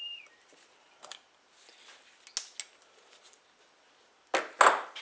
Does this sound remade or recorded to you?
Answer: recorded